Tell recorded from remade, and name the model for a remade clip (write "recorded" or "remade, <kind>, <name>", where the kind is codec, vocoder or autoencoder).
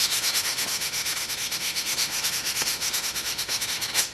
remade, autoencoder, DAC-VAE